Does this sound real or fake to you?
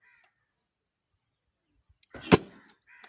real